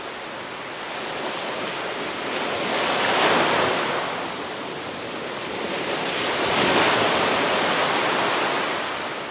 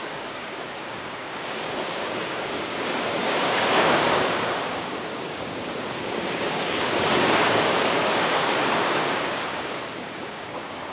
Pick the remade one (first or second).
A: second